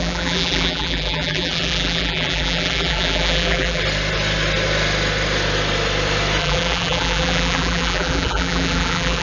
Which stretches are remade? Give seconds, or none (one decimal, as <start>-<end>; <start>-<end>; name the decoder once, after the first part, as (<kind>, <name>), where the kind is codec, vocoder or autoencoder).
0.0-3.8 (vocoder, BigVGAN v2); 6.4-9.2